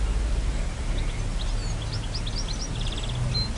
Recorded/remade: recorded